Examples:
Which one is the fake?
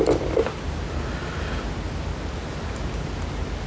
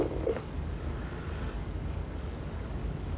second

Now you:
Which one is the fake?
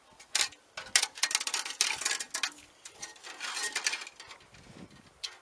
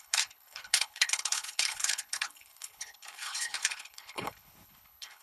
second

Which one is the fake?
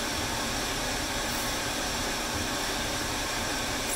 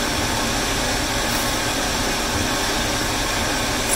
first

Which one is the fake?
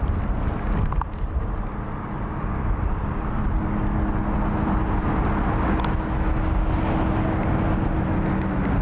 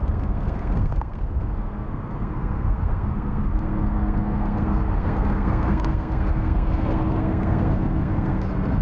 second